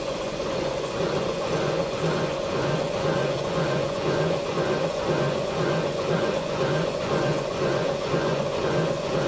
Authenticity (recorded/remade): remade